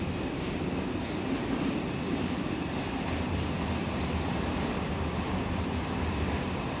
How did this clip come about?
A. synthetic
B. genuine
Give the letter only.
B